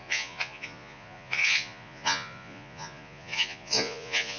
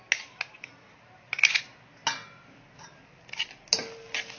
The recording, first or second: second